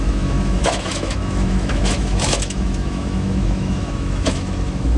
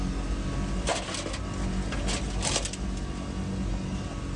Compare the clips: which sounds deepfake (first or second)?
first